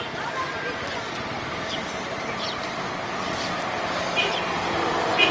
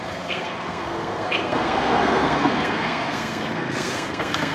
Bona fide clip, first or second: first